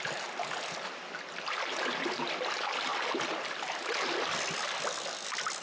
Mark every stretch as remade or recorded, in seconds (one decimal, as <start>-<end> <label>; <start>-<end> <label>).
0.0-5.6 recorded